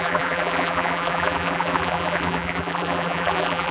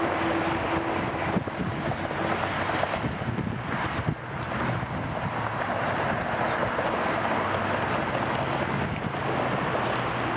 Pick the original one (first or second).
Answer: second